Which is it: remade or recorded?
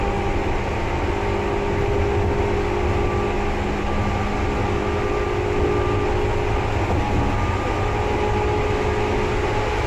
recorded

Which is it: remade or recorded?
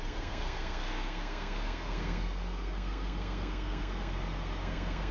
remade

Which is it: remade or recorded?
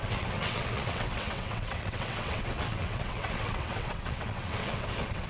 remade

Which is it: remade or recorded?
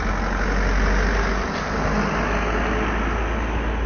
recorded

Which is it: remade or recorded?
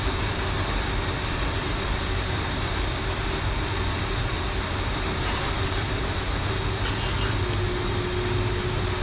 recorded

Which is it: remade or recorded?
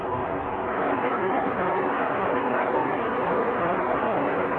remade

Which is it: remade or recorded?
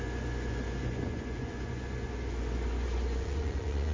remade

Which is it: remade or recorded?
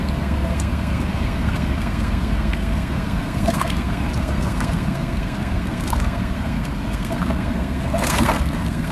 remade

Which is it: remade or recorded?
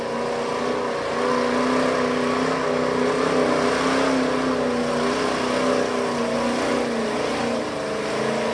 recorded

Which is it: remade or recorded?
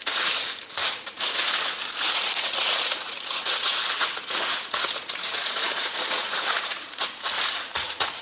remade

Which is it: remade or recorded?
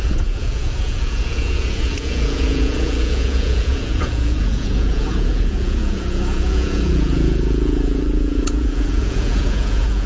remade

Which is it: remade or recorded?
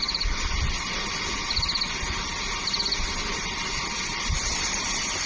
recorded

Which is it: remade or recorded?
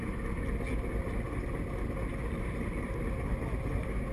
recorded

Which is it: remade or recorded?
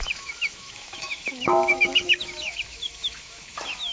remade